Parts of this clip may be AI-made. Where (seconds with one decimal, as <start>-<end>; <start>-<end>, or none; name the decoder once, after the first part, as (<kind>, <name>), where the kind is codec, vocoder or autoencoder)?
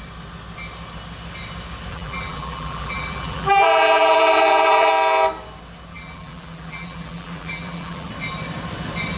1.9-4.9 (vocoder, BigVGAN v2); 5.9-8.1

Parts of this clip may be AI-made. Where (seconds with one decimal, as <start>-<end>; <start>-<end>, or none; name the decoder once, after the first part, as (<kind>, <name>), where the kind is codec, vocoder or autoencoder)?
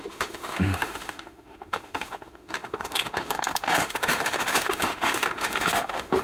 0.0-6.2 (autoencoder, DAC-VAE)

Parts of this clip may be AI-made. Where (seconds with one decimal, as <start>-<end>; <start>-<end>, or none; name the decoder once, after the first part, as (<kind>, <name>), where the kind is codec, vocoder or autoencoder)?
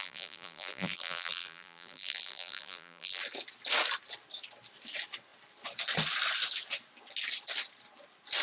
0.0-3.2 (vocoder, BigVGAN v2)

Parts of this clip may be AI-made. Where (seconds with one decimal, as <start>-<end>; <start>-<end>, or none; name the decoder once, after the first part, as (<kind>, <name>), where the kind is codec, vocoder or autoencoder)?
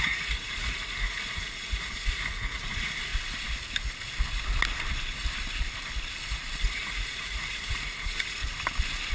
0.0-3.1 (vocoder, Vocos); 6.6-8.4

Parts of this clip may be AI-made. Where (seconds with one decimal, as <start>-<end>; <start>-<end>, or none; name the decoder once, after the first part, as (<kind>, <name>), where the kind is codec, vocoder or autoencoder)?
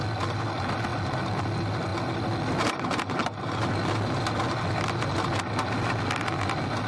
none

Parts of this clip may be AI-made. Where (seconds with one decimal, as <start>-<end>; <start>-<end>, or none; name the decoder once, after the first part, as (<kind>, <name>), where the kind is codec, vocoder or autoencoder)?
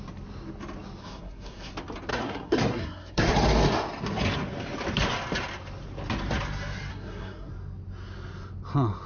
1.0-1.7 (codec, SNAC); 2.1-3.3; 6.9-7.5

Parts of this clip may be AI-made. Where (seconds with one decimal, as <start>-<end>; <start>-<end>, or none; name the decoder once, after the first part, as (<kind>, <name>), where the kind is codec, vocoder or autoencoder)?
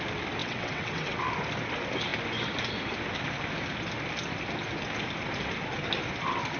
0.4-1.2 (vocoder, WaveNeXt)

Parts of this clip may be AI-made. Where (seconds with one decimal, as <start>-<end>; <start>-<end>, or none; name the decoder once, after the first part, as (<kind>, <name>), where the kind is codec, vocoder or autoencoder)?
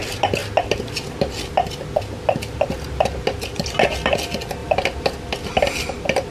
none